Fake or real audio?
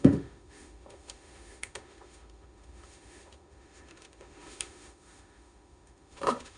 fake